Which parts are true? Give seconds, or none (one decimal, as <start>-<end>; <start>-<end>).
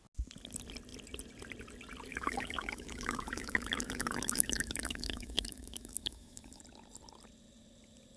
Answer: 0.0-2.1; 6.6-8.2